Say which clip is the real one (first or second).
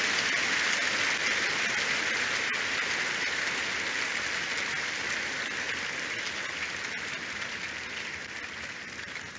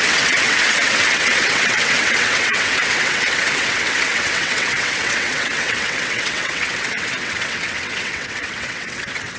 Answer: first